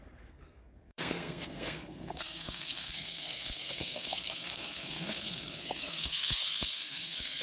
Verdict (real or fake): fake